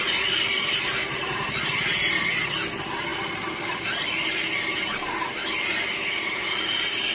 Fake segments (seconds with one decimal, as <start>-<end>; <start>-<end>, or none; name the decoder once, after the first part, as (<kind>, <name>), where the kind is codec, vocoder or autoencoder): none